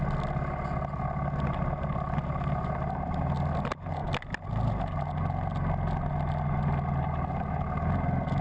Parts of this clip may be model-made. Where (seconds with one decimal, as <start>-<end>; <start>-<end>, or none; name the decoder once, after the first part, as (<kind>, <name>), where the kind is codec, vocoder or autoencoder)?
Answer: none